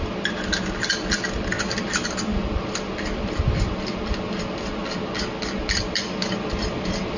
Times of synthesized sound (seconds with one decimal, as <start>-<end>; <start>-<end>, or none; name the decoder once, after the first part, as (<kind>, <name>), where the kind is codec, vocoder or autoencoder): none